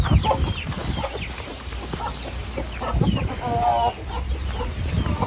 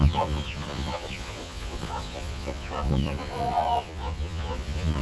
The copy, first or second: second